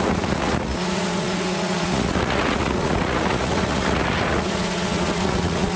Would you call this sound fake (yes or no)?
yes